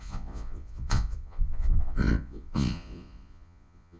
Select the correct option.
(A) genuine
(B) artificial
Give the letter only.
B